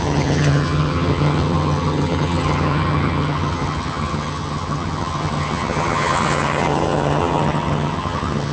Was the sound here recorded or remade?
remade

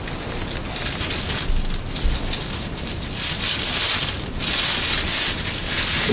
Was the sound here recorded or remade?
recorded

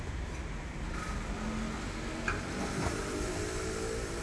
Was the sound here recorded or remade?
recorded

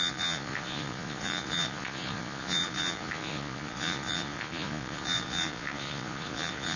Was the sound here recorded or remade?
remade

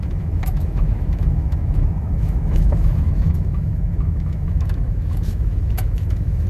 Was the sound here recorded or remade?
remade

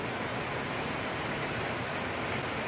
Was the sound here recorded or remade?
recorded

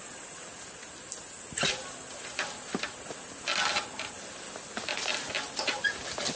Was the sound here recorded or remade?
recorded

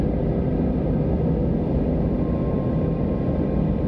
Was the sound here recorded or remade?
recorded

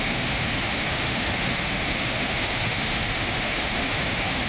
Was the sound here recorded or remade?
remade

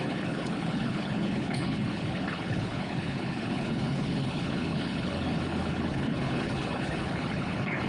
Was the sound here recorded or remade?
remade